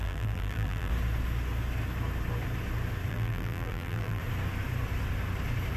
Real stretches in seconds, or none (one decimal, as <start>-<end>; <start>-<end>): 0.9-3.1; 4.2-5.8